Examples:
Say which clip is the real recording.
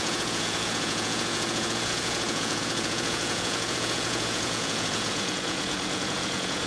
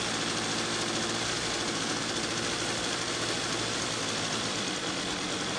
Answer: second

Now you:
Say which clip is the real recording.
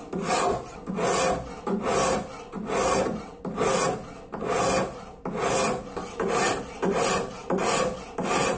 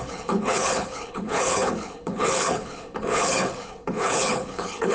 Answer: first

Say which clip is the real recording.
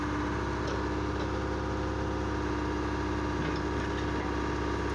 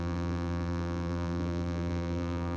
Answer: first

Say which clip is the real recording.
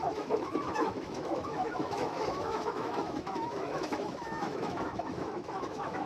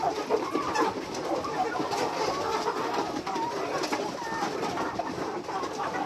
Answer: second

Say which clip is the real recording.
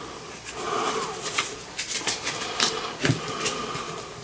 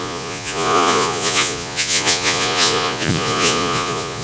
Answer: first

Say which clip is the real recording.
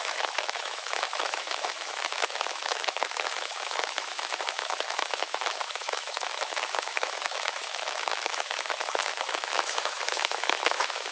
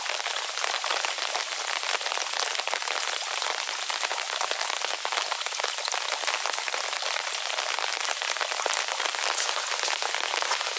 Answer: second